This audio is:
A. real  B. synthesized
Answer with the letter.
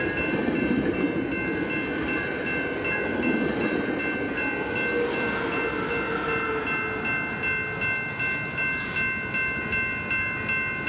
A